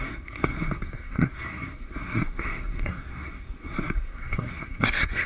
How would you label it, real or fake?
fake